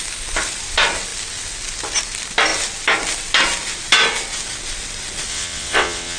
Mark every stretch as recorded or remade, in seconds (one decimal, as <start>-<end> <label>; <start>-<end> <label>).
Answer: 0.0-5.3 recorded; 5.3-6.2 remade